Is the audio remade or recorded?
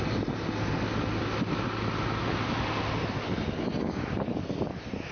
recorded